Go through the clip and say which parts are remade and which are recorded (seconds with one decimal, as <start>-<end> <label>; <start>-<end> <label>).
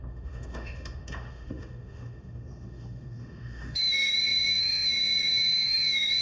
0.0-6.2 remade